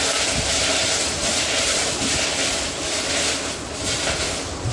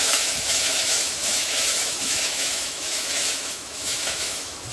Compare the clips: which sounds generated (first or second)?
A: second